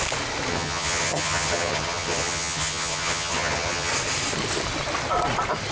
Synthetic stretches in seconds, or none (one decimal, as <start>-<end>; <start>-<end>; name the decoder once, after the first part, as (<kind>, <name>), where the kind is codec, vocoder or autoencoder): 0.5-3.9 (vocoder, HiFi-GAN)